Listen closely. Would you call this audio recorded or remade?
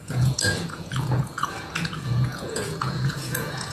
remade